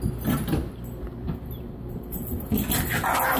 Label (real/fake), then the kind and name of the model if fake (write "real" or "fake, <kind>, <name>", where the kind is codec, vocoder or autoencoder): real